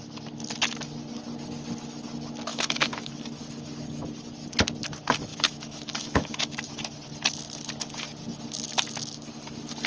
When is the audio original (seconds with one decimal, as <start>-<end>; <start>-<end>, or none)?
0.0-2.5; 3.1-5.3; 6.7-9.9